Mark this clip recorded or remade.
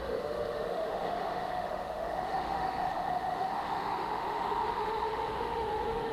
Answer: remade